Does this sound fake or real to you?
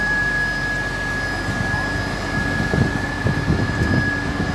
real